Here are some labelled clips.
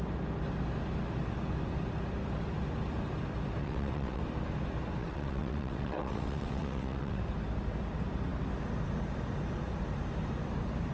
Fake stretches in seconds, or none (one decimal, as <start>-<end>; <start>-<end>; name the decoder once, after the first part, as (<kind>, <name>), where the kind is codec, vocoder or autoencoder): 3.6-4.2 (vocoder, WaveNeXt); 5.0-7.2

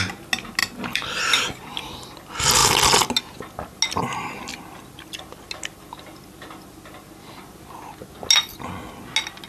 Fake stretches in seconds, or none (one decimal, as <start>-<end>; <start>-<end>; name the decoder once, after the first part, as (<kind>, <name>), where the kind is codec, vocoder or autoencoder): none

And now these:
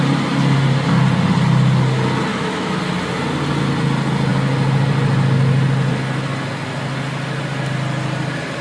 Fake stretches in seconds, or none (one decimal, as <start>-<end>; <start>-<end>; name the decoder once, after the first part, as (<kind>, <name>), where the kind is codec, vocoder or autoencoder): 2.3-2.8 (autoencoder, DAC-VAE)